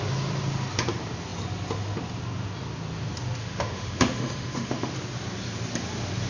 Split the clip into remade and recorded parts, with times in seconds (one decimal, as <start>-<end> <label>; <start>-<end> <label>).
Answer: 0.0-3.4 recorded; 3.4-4.9 remade; 4.9-6.3 recorded